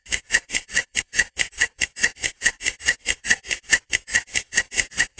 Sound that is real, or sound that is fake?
fake